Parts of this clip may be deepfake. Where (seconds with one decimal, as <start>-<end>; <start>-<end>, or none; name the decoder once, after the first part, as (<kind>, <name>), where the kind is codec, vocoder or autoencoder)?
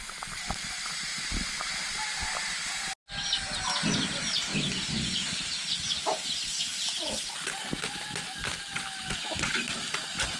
1.1-1.7 (vocoder, BigVGAN v2); 4.5-5.3; 6.7-8.5